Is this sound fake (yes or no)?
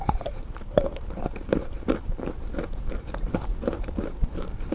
yes